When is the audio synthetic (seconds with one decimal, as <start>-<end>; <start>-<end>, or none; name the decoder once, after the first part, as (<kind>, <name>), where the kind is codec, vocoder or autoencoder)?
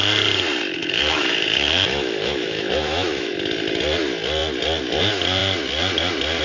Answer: 0.8-3.3 (autoencoder, DAC-VAE)